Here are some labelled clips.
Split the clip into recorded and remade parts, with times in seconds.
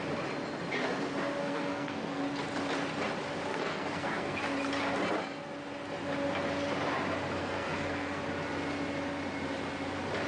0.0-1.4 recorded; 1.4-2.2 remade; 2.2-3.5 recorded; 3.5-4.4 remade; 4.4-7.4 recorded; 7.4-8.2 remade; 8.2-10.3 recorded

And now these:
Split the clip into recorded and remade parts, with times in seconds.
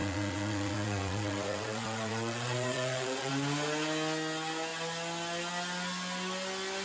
0.0-3.3 remade; 3.3-6.8 recorded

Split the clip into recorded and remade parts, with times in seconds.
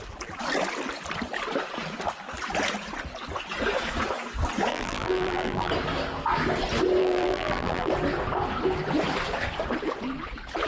0.0-4.7 recorded; 4.7-5.7 remade; 5.7-7.0 recorded; 7.0-7.9 remade; 7.9-10.7 recorded